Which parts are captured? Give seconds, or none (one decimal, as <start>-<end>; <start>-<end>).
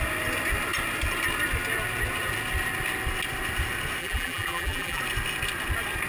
0.0-4.0; 5.0-6.1